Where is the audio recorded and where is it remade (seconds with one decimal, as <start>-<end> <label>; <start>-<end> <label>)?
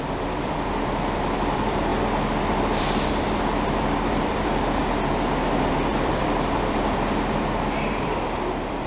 0.0-1.9 remade; 1.9-2.8 recorded; 2.8-4.8 remade; 4.8-5.9 recorded; 5.9-8.9 remade